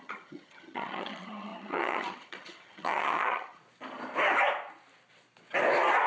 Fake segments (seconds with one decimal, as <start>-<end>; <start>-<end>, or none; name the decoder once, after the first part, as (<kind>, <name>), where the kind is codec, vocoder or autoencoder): 0.0-3.6 (vocoder, HiFi-GAN)